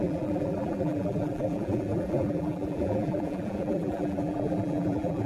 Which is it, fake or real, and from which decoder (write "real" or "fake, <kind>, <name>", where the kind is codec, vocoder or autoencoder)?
fake, vocoder, BigVGAN v2